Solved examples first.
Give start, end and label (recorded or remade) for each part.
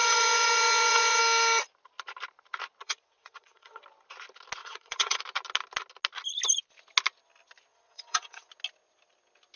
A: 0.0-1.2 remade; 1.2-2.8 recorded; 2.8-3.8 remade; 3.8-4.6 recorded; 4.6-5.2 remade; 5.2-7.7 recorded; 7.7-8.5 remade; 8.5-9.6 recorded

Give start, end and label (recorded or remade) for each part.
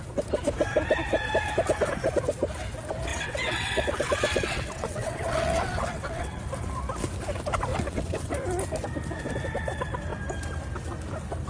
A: 0.0-3.1 recorded; 3.1-6.4 remade; 6.4-7.7 recorded; 7.7-8.3 remade; 8.3-11.5 recorded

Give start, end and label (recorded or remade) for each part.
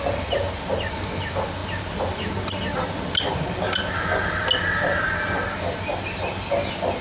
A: 0.0-7.0 recorded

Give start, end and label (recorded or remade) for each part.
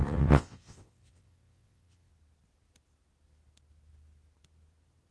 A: 0.0-2.1 remade; 2.1-5.1 recorded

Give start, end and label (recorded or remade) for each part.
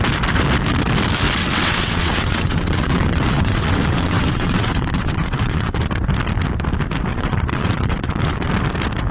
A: 0.0-1.4 recorded; 1.4-5.8 remade; 5.8-7.1 recorded; 7.1-8.5 remade; 8.5-9.1 recorded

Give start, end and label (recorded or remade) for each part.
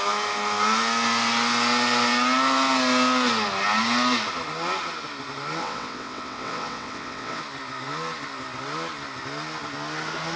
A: 0.0-5.6 recorded; 5.6-7.4 remade; 7.4-10.4 recorded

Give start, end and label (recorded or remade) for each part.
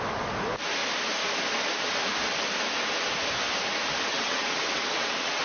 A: 0.0-4.1 recorded; 4.1-5.4 remade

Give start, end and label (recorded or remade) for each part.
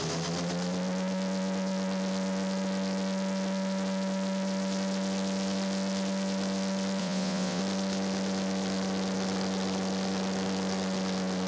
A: 0.0-7.0 recorded; 7.0-7.6 remade; 7.6-11.5 recorded